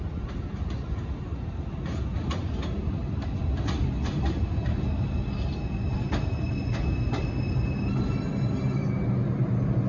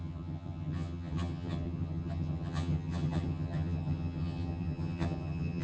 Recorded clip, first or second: first